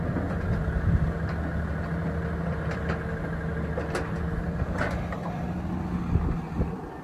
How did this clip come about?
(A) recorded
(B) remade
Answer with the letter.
A